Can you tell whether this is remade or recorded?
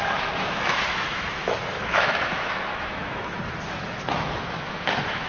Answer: remade